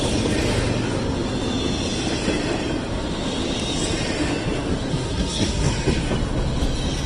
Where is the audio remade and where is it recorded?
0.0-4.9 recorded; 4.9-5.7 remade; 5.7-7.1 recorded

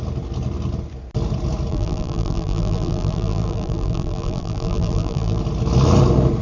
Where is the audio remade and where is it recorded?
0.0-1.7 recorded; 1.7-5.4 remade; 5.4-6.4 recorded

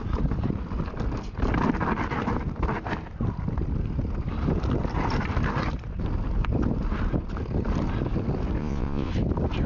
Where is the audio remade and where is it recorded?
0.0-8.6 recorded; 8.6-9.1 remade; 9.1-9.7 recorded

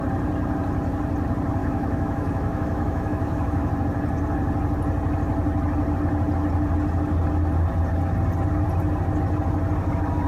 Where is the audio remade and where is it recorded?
0.0-1.6 recorded; 1.6-3.7 remade; 3.7-10.3 recorded